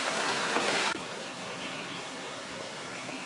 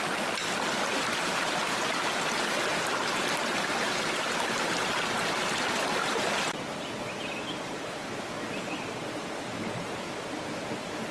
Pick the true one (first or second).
second